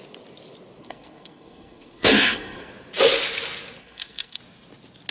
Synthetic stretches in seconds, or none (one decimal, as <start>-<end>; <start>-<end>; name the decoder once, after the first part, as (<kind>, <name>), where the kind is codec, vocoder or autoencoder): 0.8-2.7 (codec, SNAC); 3.8-4.4